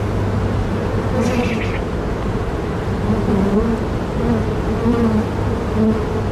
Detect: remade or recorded recorded